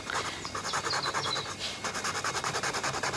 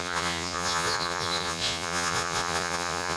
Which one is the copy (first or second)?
second